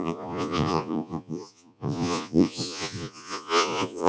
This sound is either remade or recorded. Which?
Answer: remade